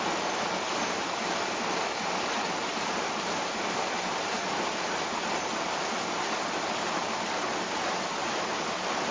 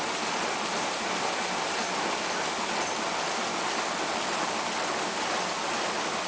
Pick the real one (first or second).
second